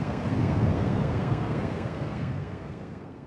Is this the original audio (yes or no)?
no